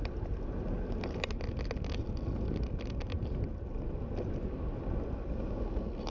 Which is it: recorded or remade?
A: recorded